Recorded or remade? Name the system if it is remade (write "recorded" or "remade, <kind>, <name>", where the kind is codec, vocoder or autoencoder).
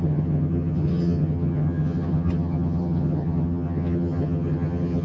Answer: remade, vocoder, HiFi-GAN